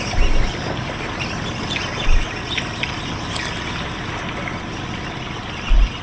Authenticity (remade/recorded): recorded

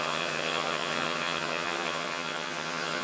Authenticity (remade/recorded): remade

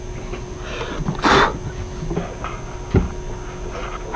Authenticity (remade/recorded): recorded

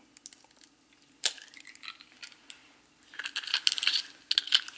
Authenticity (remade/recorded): recorded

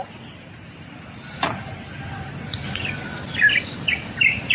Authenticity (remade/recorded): recorded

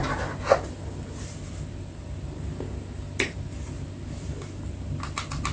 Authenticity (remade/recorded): recorded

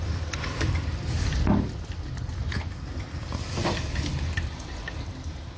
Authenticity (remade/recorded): recorded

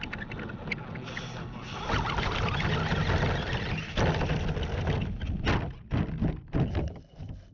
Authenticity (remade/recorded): recorded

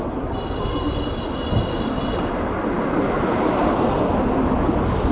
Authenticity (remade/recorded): recorded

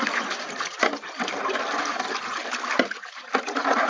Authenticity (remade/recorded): recorded